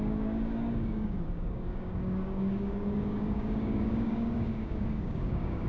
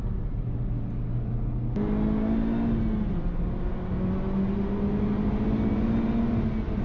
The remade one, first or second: first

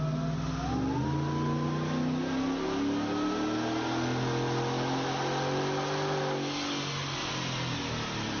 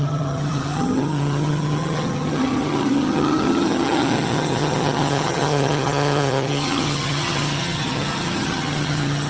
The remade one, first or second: second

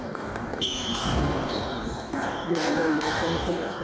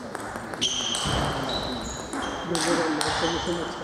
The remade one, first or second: first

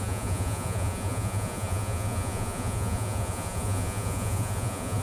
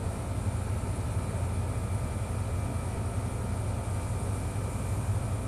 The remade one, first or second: first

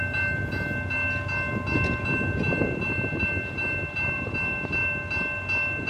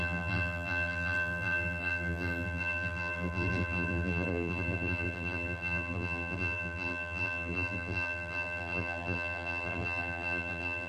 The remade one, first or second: second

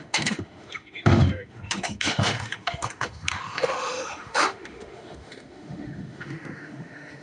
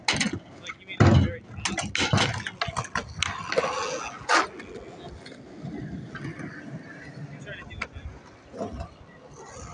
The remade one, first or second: first